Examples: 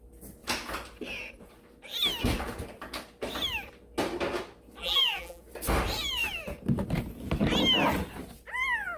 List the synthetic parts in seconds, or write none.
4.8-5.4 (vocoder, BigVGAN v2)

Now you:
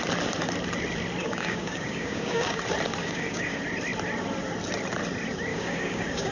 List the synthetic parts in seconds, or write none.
1.2-2.6 (codec, DAC); 3.0-3.6; 5.5-6.3

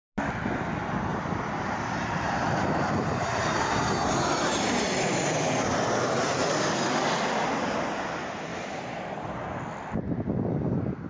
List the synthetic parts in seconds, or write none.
1.1-3.7 (vocoder, BigVGAN v2); 8.5-9.6

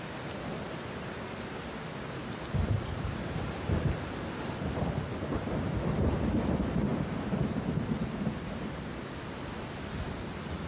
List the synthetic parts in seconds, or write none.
2.2-3.9 (vocoder, BigVGAN v2)

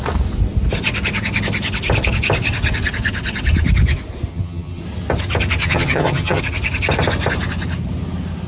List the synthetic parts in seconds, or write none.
4.3-4.8 (vocoder, HiFi-GAN); 5.6-6.4

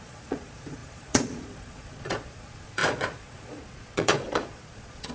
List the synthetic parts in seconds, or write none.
0.0-5.1 (vocoder, Vocos)

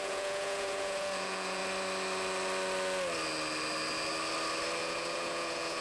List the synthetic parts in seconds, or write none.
0.0-1.6 (vocoder, Vocos); 4.8-5.8